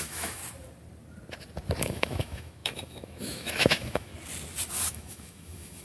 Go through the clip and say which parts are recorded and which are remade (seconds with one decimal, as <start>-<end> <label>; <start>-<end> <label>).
0.0-0.4 remade; 0.4-1.8 recorded; 1.8-4.1 remade; 4.1-4.9 recorded; 4.9-5.8 remade